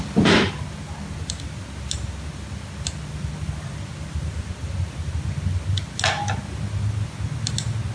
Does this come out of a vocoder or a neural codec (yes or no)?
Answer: no